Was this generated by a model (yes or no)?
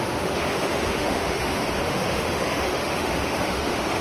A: yes